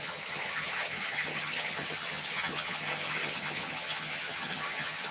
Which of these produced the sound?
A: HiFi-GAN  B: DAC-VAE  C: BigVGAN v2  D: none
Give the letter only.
A